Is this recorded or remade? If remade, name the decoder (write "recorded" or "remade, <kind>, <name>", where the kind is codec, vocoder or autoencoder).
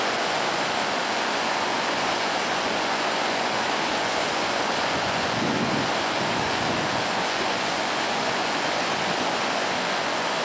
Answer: remade, vocoder, Vocos